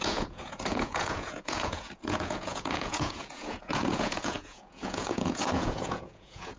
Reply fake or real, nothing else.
fake